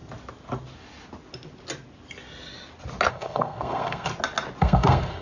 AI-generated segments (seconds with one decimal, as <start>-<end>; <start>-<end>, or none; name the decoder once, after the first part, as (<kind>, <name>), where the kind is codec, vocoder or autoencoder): 3.1-4.1 (codec, SNAC); 4.6-5.2